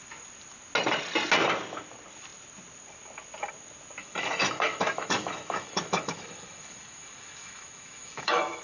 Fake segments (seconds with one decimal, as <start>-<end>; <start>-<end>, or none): 4.0-8.6